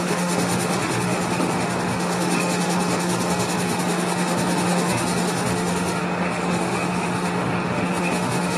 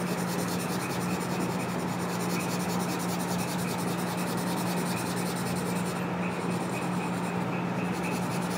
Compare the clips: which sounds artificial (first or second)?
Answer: first